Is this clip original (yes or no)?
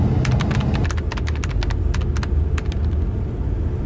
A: yes